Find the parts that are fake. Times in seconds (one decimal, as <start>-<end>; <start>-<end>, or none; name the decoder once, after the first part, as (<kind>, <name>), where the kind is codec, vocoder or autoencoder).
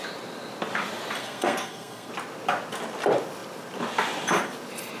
1.2-2.1 (codec, SNAC)